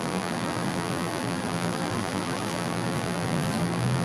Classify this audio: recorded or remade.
remade